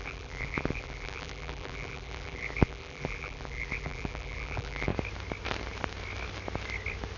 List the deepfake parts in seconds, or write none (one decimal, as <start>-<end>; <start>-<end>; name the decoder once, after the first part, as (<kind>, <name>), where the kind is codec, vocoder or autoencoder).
0.0-4.9 (vocoder, BigVGAN v2)